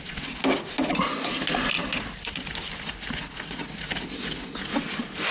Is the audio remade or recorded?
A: recorded